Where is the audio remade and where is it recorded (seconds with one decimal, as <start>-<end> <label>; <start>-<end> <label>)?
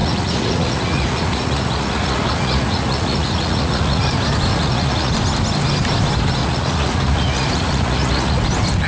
0.0-4.1 remade; 4.1-4.5 recorded; 4.5-5.1 remade; 5.1-6.4 recorded; 6.4-8.4 remade; 8.4-8.9 recorded